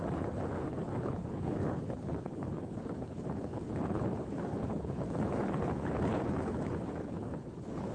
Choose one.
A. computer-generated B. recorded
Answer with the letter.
A